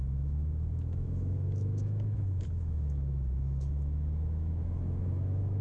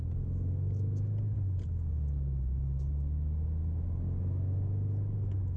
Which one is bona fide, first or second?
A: second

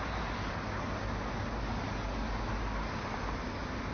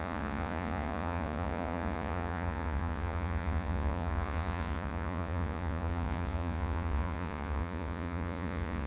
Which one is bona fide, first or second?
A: first